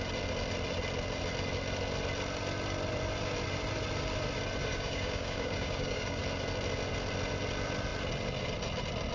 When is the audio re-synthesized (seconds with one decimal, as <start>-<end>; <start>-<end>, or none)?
4.7-6.2